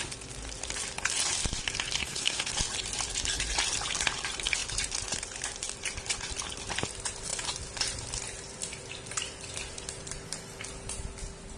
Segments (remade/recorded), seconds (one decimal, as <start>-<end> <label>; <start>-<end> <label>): 0.0-2.0 recorded; 2.0-2.5 remade; 2.5-11.6 recorded